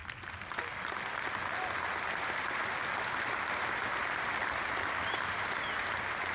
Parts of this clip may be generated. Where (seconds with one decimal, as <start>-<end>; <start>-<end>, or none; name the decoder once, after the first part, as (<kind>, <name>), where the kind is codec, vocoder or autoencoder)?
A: none